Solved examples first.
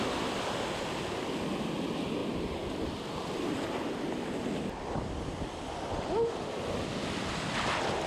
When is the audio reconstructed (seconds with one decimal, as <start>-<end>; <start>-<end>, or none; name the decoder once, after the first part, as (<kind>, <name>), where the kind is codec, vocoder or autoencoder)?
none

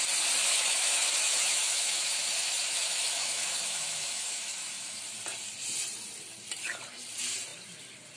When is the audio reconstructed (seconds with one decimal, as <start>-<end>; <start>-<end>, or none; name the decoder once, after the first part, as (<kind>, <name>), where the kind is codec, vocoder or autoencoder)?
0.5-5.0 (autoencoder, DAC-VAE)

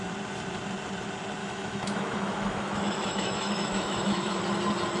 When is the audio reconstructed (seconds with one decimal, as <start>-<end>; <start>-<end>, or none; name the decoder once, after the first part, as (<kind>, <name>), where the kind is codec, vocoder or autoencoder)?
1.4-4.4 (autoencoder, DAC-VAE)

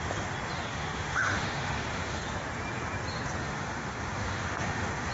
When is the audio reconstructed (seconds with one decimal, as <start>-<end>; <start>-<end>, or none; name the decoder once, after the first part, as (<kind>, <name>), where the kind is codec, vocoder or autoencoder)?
0.7-2.2 (autoencoder, DAC-VAE); 3.4-5.1

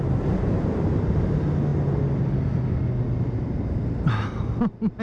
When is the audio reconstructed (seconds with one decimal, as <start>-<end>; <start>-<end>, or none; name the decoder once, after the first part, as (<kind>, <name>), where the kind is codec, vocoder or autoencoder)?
none

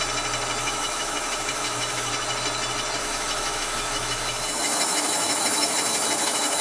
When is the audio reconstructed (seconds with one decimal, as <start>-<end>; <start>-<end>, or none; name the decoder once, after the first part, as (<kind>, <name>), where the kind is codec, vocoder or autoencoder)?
0.6-2.1 (autoencoder, DAC-VAE); 3.0-6.6